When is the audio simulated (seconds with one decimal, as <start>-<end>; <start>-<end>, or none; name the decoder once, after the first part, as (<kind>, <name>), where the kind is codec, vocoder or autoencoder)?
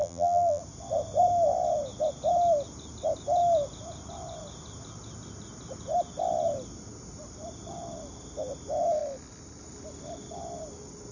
0.0-0.6 (vocoder, BigVGAN v2)